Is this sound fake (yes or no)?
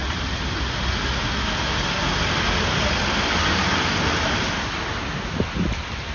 no